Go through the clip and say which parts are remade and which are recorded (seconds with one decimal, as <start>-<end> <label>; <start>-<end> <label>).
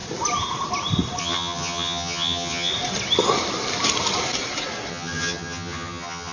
0.0-1.2 recorded; 1.2-2.7 remade; 2.7-4.9 recorded; 4.9-6.3 remade